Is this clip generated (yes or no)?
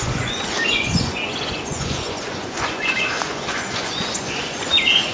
yes